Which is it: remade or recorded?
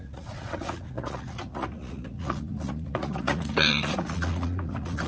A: remade